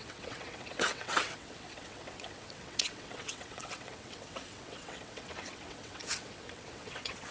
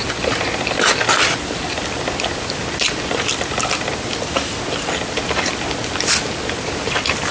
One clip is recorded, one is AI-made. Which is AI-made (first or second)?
first